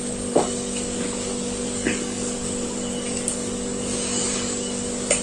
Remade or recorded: remade